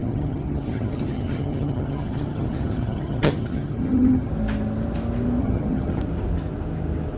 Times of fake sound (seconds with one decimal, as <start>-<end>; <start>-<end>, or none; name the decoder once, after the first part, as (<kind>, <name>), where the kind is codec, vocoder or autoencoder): 0.0-4.3 (vocoder, HiFi-GAN); 5.4-6.0